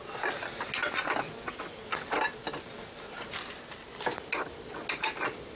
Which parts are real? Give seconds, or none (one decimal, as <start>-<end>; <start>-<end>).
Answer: 0.0-5.6